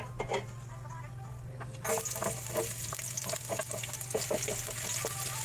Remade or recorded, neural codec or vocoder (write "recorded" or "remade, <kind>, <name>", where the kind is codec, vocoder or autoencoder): recorded